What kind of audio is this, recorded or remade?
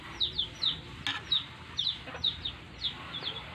recorded